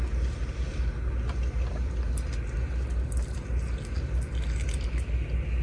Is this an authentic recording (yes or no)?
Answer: yes